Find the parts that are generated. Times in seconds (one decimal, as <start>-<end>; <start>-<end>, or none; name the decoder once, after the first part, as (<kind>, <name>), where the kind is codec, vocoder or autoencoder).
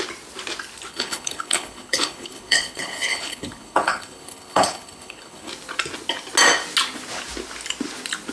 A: 0.9-5.5 (codec, HILCodec)